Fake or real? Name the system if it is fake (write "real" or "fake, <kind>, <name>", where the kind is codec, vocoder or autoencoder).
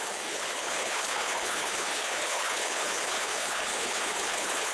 fake, codec, HILCodec